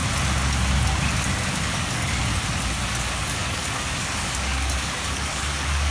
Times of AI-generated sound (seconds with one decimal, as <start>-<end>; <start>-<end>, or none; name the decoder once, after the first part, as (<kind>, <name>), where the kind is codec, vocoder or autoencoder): 1.5-2.3 (codec, DAC); 2.8-5.9